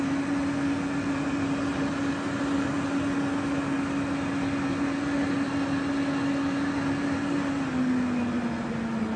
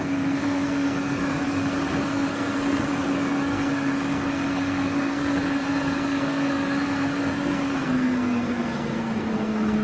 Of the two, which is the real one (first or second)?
first